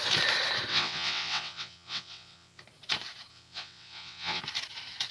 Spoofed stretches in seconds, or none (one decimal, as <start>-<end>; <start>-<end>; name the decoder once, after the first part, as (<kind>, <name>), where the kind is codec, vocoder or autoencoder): 0.7-2.6 (vocoder, WaveNeXt); 3.3-4.4